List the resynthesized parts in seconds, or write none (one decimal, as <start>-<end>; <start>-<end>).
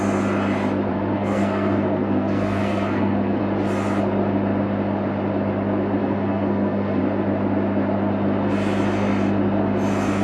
0.9-3.4; 6.0-7.0